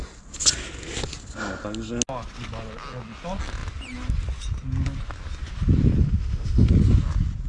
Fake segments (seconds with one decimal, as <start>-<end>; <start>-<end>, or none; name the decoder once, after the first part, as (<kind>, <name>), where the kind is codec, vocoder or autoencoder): 6.0-6.7 (autoencoder, DAC-VAE)